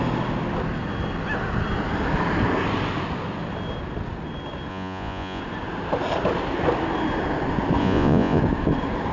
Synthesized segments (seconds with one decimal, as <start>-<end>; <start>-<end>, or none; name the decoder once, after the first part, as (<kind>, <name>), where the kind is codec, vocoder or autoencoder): 4.7-5.4 (vocoder, Vocos); 7.8-8.4